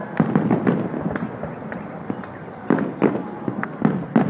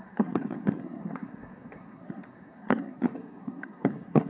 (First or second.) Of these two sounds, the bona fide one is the first